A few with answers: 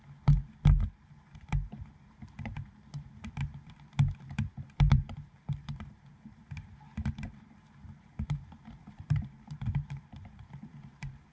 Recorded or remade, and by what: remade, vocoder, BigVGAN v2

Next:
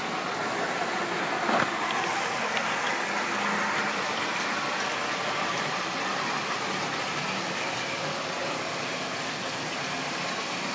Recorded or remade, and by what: remade, vocoder, BigVGAN v2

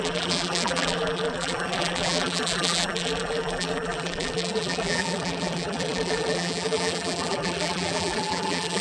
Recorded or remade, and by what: remade, vocoder, BigVGAN v2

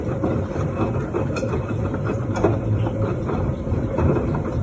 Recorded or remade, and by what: remade, vocoder, BigVGAN v2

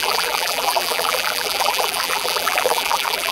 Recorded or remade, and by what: remade, vocoder, BigVGAN v2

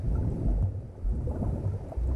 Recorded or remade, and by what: recorded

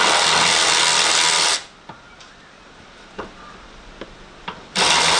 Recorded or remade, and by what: recorded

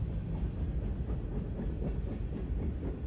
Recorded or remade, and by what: recorded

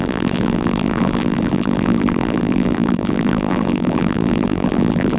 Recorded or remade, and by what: remade, vocoder, BigVGAN v2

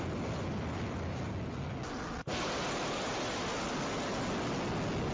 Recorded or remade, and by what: recorded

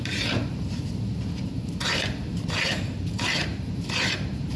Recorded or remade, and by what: remade, vocoder, BigVGAN v2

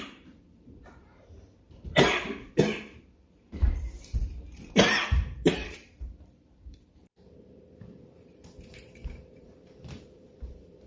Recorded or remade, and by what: remade, vocoder, BigVGAN v2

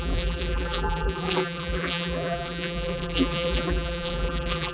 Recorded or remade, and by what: remade, vocoder, BigVGAN v2